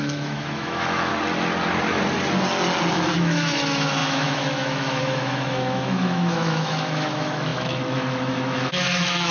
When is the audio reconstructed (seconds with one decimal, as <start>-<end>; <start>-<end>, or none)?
0.0-1.1; 2.9-9.3

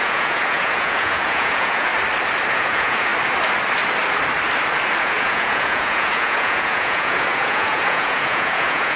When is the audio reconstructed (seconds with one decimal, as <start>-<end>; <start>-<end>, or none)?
0.0-1.9; 2.5-3.1; 5.0-9.0

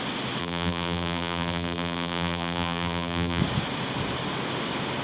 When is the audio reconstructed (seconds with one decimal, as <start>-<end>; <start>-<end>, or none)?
0.4-3.4

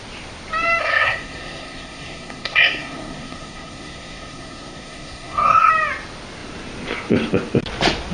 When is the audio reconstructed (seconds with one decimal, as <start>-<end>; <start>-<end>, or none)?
0.8-5.7

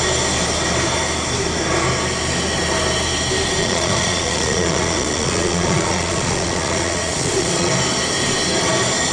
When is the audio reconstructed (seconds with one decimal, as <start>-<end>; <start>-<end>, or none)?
3.6-7.7

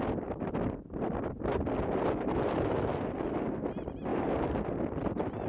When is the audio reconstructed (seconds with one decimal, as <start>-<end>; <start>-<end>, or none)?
none